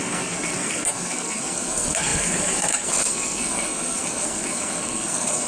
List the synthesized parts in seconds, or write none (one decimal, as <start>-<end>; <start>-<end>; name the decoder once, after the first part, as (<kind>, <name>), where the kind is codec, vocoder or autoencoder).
0.0-5.5 (codec, SNAC)

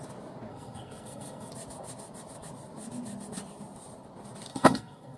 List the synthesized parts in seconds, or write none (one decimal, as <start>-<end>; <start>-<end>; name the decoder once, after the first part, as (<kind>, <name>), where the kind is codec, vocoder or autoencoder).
0.5-1.5 (codec, SNAC); 4.5-5.2

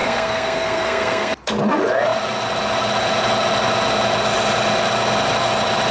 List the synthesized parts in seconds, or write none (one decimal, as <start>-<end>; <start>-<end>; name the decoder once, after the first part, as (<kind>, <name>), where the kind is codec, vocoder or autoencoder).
0.0-1.3 (codec, SNAC)

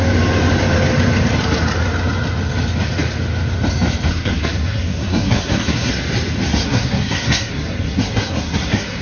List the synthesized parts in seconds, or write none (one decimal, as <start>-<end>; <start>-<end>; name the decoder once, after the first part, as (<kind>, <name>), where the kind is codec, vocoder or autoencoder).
4.1-5.9 (codec, SNAC); 6.6-9.0